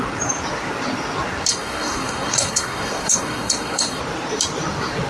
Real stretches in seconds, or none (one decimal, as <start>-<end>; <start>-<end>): 0.0-1.5; 4.0-5.1